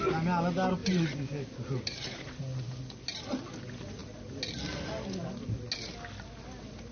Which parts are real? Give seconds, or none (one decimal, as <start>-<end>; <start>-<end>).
0.0-0.8; 2.8-6.9

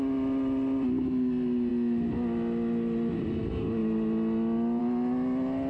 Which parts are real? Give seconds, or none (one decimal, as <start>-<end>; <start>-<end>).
0.0-5.7

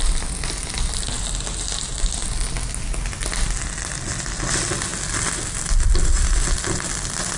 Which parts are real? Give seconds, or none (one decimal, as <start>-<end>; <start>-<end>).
0.0-7.4